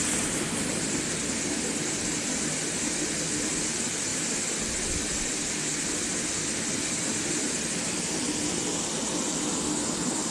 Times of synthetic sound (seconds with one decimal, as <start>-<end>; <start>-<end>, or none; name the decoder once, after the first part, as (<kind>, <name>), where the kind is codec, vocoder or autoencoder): none